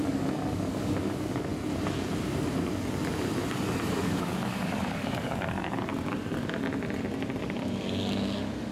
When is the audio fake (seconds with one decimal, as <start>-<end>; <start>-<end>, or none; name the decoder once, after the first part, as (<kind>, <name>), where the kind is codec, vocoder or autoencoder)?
0.0-1.5 (codec, DAC); 3.9-5.9; 7.4-8.7